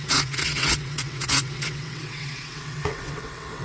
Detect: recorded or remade remade